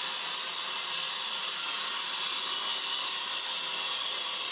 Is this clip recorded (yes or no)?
yes